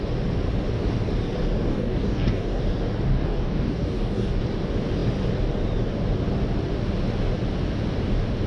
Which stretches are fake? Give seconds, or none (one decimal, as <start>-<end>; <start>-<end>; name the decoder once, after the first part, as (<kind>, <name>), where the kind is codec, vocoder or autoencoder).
1.7-2.6 (codec, DAC); 3.1-4.4